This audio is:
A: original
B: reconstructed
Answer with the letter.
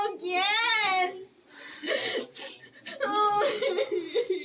A